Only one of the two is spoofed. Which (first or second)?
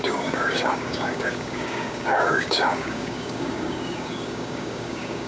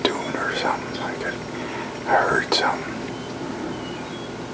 first